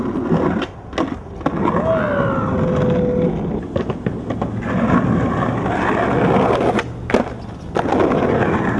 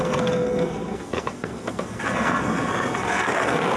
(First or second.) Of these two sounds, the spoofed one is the second